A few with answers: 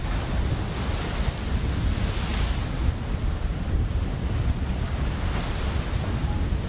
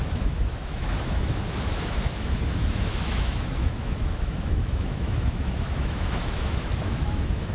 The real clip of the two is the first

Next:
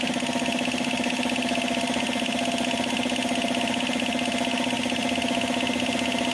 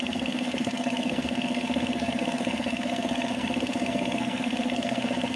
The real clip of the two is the first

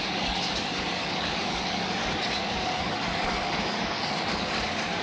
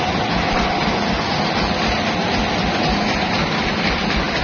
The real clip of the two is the second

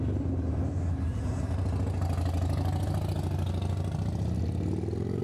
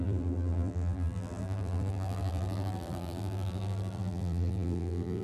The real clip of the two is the first